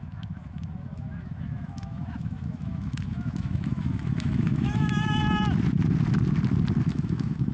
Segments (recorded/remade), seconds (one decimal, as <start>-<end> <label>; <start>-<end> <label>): 0.0-5.2 remade; 5.2-6.9 recorded; 6.9-7.5 remade

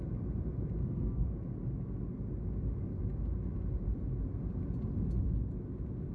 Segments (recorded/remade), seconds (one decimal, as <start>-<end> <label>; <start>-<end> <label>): 0.0-0.8 recorded; 0.8-1.3 remade; 1.3-6.1 recorded